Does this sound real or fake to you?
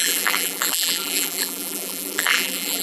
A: fake